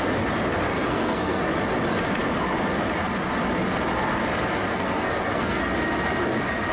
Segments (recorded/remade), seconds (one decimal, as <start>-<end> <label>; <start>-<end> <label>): 0.0-0.7 recorded; 0.7-1.4 remade; 1.4-4.7 recorded; 4.7-5.6 remade; 5.6-6.7 recorded

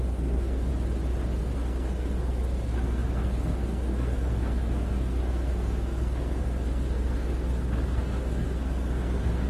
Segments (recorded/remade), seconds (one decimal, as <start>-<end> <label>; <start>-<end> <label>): 0.0-0.7 remade; 0.7-1.4 recorded; 1.4-9.5 remade

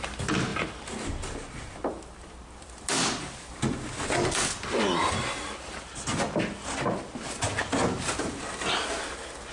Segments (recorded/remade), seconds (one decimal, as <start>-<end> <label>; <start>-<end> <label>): 0.0-9.5 recorded

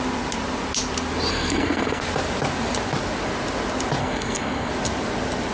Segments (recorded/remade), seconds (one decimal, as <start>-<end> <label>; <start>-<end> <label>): 0.0-1.3 recorded; 1.3-2.0 remade; 2.0-4.0 recorded; 4.0-4.7 remade; 4.7-5.5 recorded

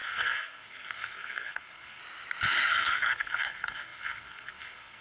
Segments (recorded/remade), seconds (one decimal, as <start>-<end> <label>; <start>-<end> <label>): 0.0-2.0 remade; 2.0-2.7 recorded; 2.7-5.0 remade

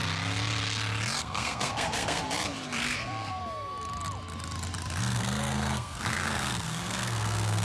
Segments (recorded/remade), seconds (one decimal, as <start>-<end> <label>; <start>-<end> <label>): 0.0-1.2 recorded; 1.2-2.2 remade; 2.2-2.8 recorded; 2.8-3.4 remade; 3.4-5.0 recorded; 5.0-7.6 remade

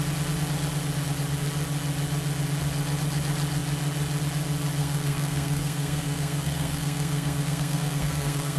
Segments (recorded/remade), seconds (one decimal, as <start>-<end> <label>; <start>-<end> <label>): 0.0-4.8 recorded; 4.8-8.6 remade

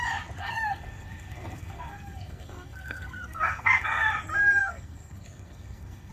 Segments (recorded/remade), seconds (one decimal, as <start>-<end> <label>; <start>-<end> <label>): 0.0-0.4 recorded; 0.4-4.1 remade; 4.1-4.6 recorded; 4.6-6.1 remade